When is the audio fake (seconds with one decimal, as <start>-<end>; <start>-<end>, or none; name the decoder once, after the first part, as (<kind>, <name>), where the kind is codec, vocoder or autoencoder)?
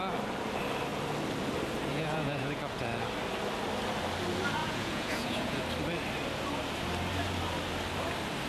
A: 1.9-2.6 (vocoder, Vocos); 4.6-5.6